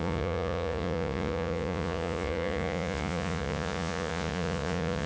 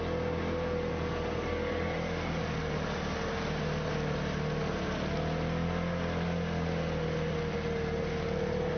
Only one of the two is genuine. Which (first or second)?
second